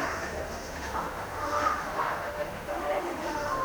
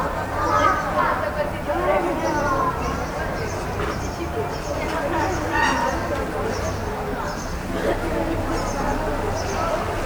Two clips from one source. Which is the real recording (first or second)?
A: second